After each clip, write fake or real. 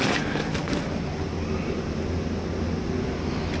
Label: real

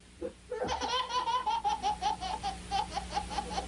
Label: real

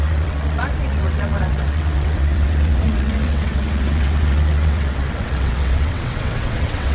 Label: fake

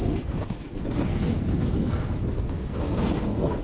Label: fake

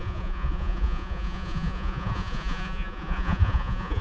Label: fake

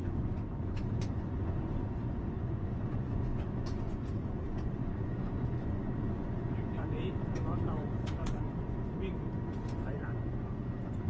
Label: fake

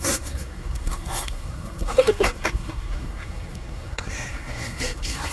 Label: fake